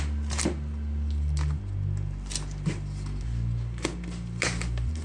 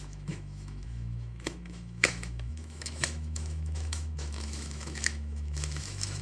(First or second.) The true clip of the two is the first